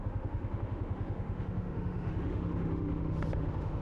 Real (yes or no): no